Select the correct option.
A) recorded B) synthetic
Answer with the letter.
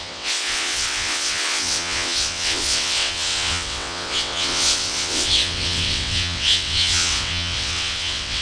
B